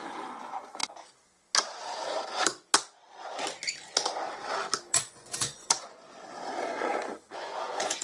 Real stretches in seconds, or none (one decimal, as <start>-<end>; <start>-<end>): 0.8-4.9

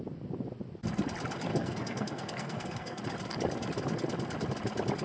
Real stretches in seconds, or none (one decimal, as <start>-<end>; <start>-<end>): 0.0-1.5; 3.0-5.0

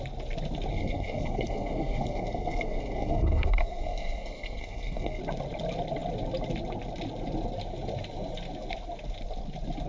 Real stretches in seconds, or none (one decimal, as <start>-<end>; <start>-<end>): 0.0-0.7; 5.2-9.9

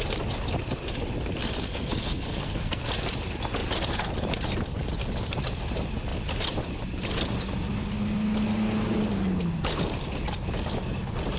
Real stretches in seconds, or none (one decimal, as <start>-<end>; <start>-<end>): 0.0-1.7; 2.9-11.4

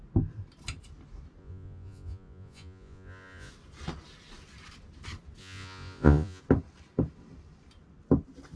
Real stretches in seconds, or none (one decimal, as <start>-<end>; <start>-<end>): 0.0-1.4; 3.5-5.4; 6.4-8.6

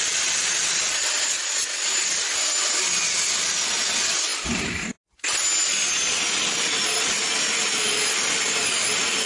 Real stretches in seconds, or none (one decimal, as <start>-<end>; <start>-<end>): 0.0-9.3